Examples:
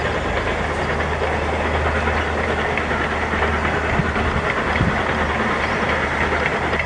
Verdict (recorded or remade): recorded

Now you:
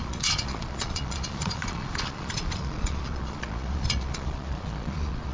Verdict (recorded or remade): remade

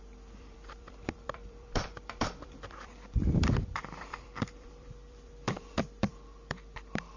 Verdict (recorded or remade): remade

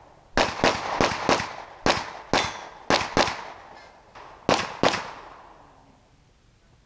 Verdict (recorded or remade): recorded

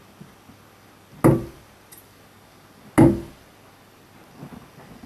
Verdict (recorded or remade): recorded